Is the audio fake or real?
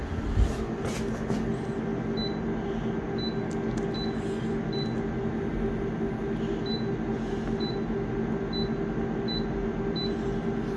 real